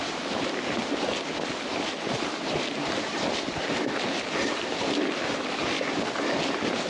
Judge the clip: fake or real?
real